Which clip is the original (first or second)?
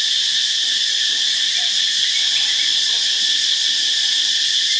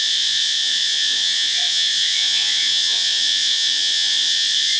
first